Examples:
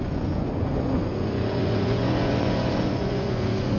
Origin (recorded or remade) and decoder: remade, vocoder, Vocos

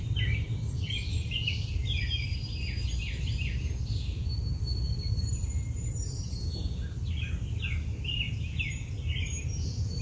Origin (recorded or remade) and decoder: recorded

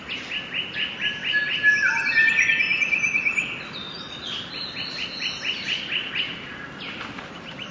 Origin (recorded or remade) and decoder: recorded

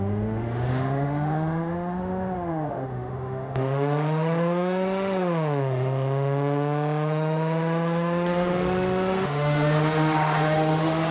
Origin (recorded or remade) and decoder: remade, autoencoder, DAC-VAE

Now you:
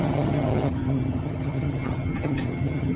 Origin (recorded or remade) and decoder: remade, vocoder, HiFi-GAN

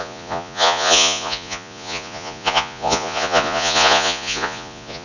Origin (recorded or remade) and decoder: remade, vocoder, Vocos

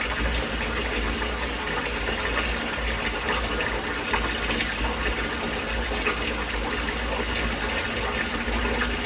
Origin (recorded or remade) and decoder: recorded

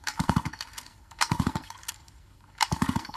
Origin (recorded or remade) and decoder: remade, codec, SNAC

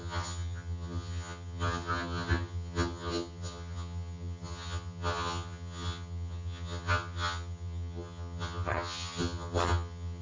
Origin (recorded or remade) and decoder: remade, vocoder, HiFi-GAN